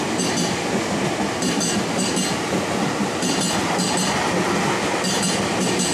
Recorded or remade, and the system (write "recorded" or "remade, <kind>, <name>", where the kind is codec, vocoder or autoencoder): recorded